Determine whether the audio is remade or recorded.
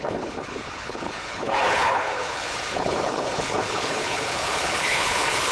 remade